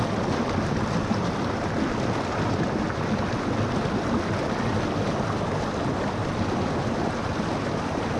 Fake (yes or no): no